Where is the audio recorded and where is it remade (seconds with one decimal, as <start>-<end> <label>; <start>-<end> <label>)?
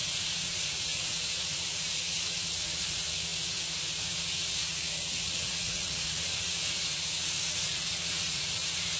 0.0-9.0 remade